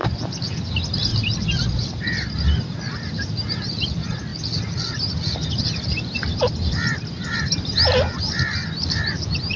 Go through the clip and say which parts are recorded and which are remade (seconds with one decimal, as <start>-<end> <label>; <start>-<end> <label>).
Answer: 0.0-1.1 recorded; 1.1-1.6 remade; 1.6-8.6 recorded; 8.6-9.6 remade